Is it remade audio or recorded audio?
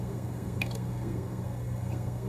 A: remade